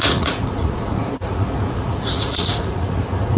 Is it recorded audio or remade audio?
remade